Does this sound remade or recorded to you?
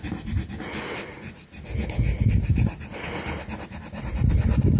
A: recorded